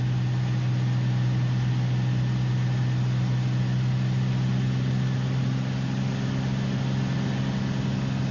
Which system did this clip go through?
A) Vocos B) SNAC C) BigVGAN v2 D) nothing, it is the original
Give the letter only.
D